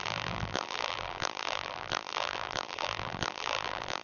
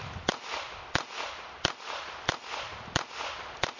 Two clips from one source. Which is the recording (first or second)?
second